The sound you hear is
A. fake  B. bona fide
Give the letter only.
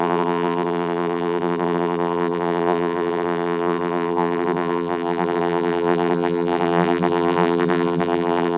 A